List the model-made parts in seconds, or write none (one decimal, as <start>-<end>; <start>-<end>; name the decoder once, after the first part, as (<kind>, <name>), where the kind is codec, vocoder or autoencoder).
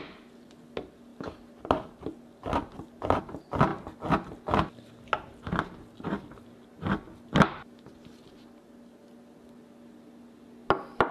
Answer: none